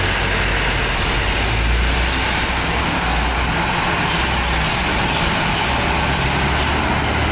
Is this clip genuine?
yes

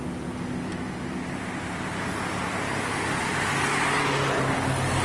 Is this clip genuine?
yes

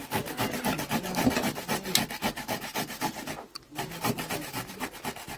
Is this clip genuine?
yes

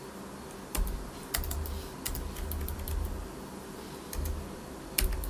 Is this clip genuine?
yes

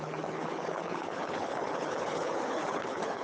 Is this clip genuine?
no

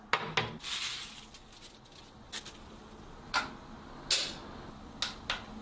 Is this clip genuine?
yes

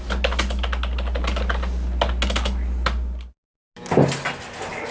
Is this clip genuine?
yes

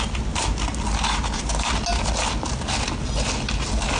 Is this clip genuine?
yes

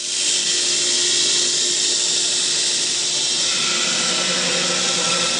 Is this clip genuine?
yes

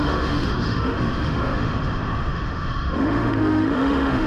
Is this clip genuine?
no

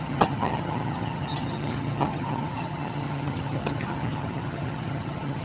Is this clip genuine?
no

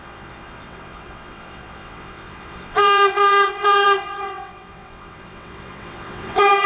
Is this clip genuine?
no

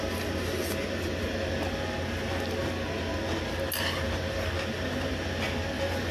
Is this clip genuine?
yes